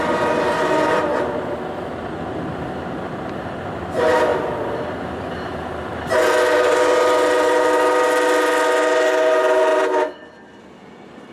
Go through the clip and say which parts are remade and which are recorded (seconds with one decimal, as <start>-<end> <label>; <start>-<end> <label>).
0.0-4.3 recorded; 4.3-5.3 remade; 5.3-9.7 recorded; 9.7-10.6 remade; 10.6-11.3 recorded